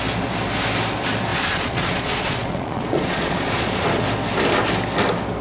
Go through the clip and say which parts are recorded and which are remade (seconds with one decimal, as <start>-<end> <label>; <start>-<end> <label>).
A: 0.0-1.3 recorded; 1.3-3.9 remade; 3.9-5.4 recorded